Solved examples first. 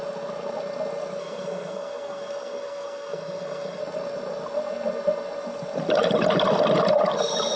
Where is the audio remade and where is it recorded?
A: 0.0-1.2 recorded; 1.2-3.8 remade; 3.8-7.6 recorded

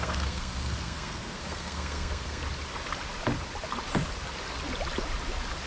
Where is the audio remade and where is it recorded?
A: 0.0-2.4 remade; 2.4-5.7 recorded